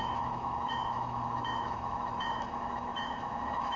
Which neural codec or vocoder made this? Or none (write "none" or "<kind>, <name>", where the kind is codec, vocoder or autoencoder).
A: autoencoder, DAC-VAE